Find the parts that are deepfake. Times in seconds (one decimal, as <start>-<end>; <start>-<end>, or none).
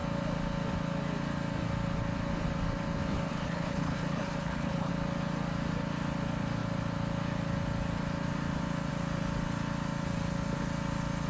3.3-4.9